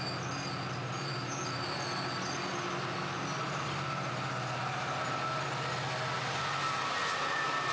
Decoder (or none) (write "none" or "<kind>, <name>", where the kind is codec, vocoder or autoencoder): none